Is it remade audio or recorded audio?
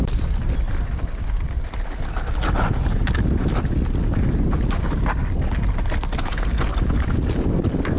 recorded